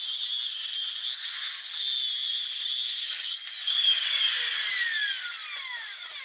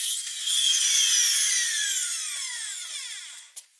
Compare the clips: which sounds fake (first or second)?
second